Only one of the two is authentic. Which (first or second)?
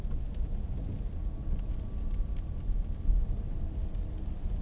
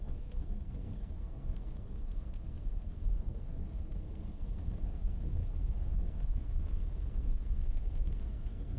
first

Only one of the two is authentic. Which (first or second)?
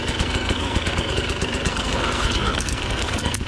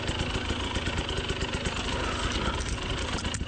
second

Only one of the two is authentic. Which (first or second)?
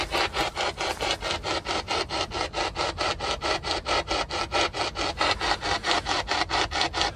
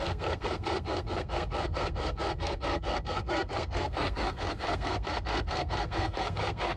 first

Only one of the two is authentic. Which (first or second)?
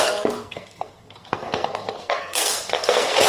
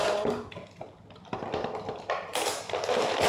second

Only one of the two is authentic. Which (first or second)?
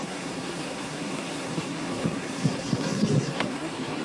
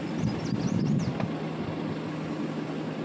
second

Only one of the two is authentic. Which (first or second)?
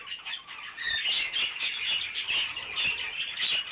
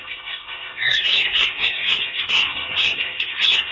first